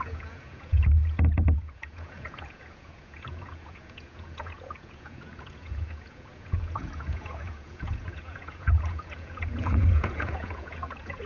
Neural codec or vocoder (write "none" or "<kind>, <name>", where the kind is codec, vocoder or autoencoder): vocoder, Vocos